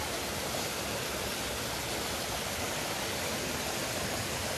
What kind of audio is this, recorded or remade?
recorded